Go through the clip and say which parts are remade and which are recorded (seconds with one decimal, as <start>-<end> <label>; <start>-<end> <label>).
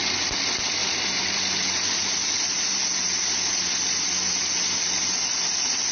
0.0-5.9 recorded